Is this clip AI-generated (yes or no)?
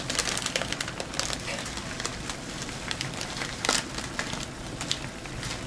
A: no